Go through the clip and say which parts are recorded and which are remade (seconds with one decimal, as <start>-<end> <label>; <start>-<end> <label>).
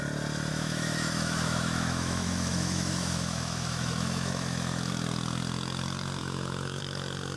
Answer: 0.0-0.5 recorded; 0.5-4.9 remade; 4.9-6.2 recorded; 6.2-6.8 remade; 6.8-7.4 recorded